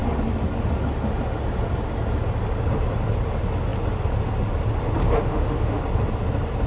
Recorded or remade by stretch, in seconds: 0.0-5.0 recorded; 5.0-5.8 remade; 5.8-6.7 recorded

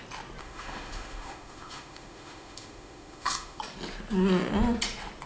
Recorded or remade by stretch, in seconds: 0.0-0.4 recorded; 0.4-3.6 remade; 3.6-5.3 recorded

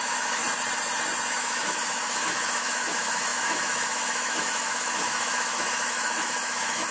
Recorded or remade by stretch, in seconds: 0.0-0.4 remade; 0.4-1.3 recorded; 1.3-6.9 remade

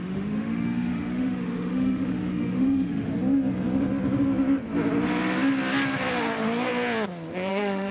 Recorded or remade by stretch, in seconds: 0.0-3.1 remade; 3.1-7.5 recorded; 7.5-7.9 remade